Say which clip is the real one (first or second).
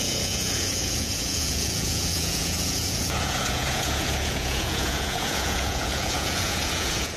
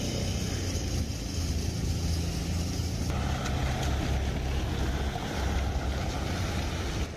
second